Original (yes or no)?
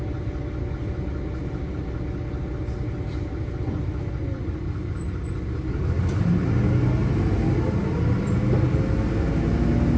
yes